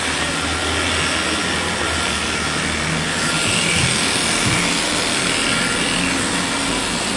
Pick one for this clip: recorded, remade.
recorded